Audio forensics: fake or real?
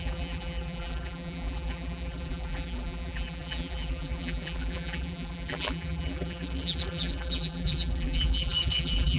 fake